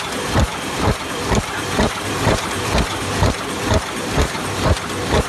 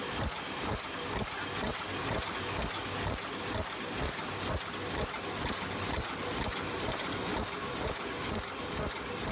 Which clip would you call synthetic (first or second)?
first